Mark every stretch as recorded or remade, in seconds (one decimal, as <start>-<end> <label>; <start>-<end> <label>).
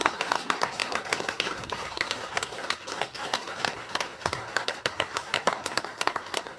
0.0-6.6 remade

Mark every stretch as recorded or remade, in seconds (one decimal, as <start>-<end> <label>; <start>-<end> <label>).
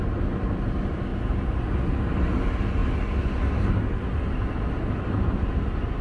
0.0-6.0 recorded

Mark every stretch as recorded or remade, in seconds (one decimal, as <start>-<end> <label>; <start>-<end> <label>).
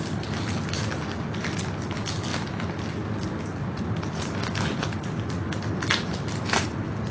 0.0-7.1 recorded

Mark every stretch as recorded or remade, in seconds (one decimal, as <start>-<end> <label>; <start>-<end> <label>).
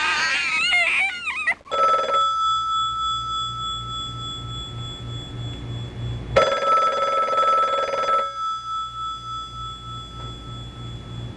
0.0-11.4 recorded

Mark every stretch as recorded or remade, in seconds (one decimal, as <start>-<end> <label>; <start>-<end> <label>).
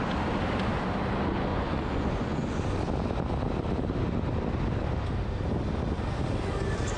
0.0-1.5 recorded; 1.5-2.6 remade; 2.6-7.0 recorded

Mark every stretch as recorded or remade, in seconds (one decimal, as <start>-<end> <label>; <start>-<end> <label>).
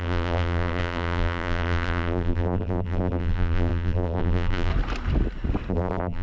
0.0-4.7 remade; 4.7-5.7 recorded; 5.7-6.2 remade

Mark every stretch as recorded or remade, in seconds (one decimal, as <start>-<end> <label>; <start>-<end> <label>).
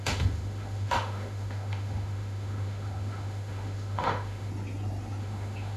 0.0-4.5 remade; 4.5-5.2 recorded; 5.2-5.8 remade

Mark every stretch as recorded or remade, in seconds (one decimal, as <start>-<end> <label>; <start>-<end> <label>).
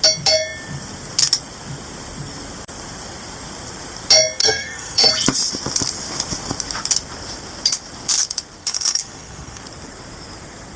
0.0-4.4 recorded; 4.4-5.1 remade; 5.1-8.6 recorded; 8.6-9.6 remade; 9.6-10.8 recorded